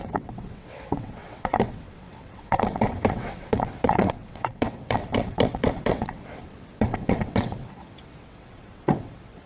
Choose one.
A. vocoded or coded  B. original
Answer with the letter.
A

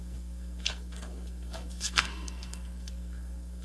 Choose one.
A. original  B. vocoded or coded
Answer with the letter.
B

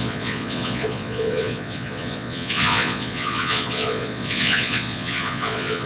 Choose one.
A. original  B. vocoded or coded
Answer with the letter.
B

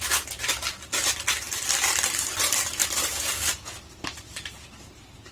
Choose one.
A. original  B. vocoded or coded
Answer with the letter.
B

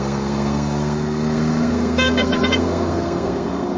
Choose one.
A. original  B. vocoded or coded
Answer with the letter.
B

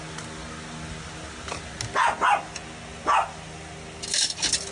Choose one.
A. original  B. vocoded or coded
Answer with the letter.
A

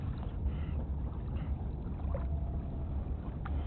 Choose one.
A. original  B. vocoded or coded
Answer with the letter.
A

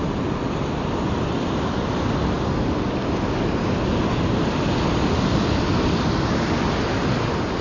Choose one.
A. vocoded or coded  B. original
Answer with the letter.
B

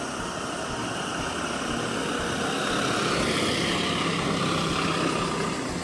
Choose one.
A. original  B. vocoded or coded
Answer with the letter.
A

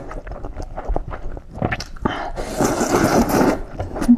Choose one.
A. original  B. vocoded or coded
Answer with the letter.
B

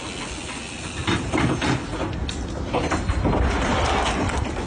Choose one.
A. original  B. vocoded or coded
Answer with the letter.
A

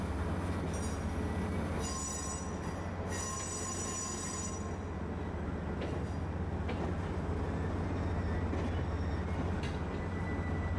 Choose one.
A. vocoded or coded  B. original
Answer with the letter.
B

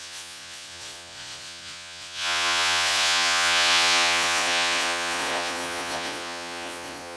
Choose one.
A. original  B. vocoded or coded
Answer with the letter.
B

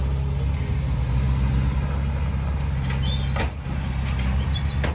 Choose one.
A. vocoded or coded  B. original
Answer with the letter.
B